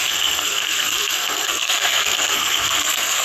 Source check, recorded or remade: remade